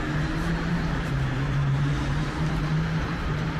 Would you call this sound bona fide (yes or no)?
no